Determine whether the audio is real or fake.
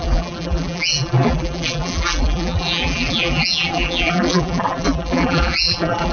fake